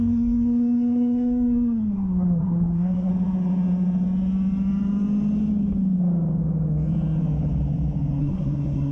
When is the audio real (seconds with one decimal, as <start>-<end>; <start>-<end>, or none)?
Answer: 3.1-8.2